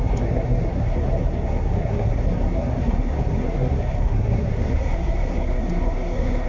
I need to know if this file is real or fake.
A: fake